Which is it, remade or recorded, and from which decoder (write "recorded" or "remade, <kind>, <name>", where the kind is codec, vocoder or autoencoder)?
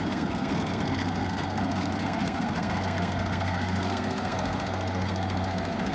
remade, codec, SNAC